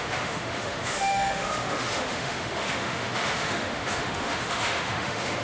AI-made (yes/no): yes